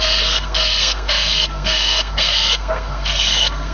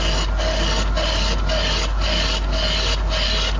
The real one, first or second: second